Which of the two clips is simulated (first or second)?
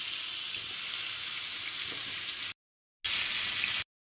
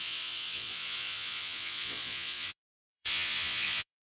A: second